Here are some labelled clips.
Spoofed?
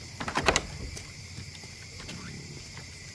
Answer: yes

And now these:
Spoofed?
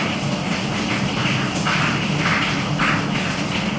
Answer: no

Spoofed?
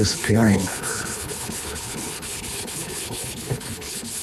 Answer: yes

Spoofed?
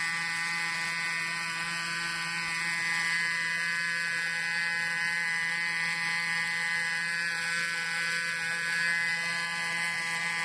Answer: no